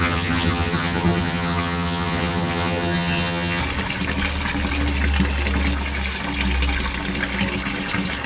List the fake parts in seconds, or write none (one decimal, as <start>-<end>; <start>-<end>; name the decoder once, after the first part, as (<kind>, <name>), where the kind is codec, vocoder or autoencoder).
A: 0.0-3.6 (vocoder, HiFi-GAN)